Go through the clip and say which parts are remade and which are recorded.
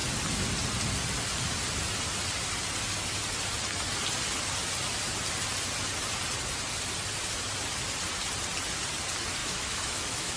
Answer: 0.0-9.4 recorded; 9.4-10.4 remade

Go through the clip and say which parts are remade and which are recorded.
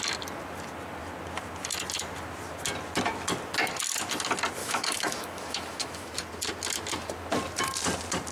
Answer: 0.0-4.6 recorded; 4.6-6.1 remade; 6.1-8.3 recorded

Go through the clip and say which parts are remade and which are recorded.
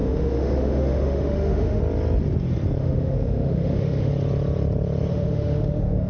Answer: 0.0-1.8 remade; 1.8-2.8 recorded; 2.8-4.1 remade; 4.1-5.1 recorded; 5.1-6.1 remade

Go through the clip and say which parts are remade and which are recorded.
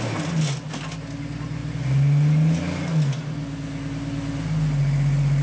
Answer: 0.0-5.4 recorded